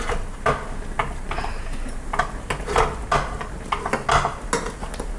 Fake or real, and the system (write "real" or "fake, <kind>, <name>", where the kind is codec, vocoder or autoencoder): real